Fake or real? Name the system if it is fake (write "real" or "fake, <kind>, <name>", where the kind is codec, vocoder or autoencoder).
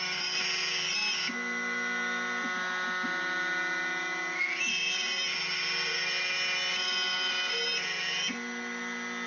real